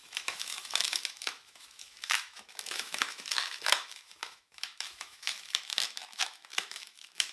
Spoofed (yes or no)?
yes